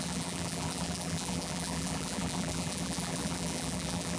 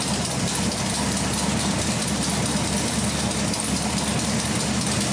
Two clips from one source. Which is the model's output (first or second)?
first